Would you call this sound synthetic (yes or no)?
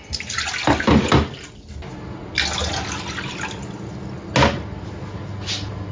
no